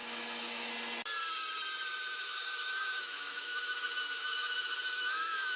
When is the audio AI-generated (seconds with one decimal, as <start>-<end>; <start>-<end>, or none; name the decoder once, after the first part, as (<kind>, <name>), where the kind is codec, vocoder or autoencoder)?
0.0-0.7 (autoencoder, DAC-VAE); 2.2-5.6